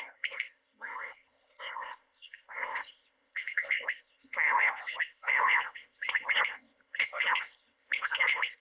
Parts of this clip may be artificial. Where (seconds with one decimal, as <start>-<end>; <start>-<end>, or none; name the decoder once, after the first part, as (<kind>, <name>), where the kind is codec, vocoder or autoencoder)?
0.0-8.6 (codec, ZipCodec)